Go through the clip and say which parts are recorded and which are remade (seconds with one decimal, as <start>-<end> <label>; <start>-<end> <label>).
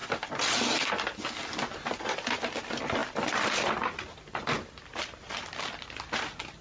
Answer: 0.0-3.0 recorded; 3.0-4.9 remade; 4.9-6.6 recorded